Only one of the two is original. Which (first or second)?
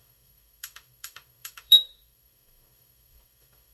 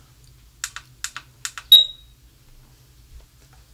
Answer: second